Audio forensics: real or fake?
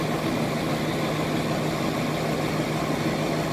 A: real